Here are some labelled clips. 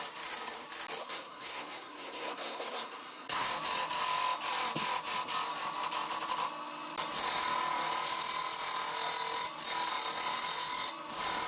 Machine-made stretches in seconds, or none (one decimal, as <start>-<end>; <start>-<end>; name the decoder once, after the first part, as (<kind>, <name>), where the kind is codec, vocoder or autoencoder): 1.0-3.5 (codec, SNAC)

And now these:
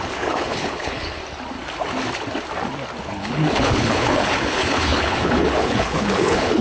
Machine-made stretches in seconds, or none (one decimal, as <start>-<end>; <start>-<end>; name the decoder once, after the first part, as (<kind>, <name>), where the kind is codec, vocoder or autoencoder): 0.0-1.2 (codec, HILCodec); 3.0-6.6

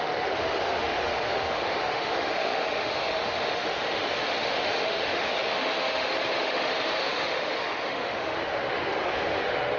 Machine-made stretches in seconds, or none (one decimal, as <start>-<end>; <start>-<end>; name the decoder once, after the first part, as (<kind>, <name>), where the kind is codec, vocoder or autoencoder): 0.0-9.8 (autoencoder, DAC-VAE)

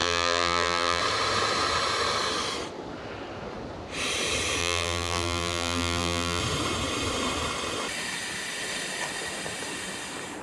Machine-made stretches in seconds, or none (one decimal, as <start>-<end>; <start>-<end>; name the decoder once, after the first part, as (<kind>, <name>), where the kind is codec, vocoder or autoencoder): 0.0-1.0 (vocoder, BigVGAN v2); 4.6-6.4

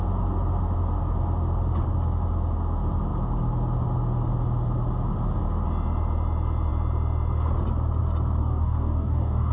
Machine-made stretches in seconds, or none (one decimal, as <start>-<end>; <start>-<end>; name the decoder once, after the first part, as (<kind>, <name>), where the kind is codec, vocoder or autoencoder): 8.4-9.5 (codec, DAC)

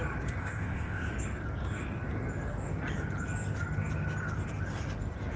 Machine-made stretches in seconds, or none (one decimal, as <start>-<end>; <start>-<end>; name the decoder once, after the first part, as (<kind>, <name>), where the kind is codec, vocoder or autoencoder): 0.4-1.1 (codec, ZipCodec)

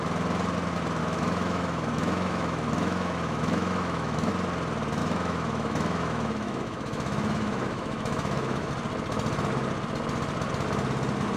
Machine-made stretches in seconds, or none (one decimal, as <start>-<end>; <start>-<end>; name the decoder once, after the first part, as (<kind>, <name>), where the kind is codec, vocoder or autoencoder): 1.0-4.3 (autoencoder, DAC-VAE); 5.0-8.7

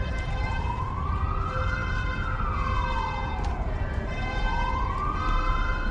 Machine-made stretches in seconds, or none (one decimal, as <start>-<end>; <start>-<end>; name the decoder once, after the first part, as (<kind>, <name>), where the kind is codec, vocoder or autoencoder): 0.5-1.1 (vocoder, BigVGAN v2)